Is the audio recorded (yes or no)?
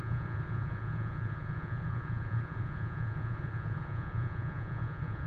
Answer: no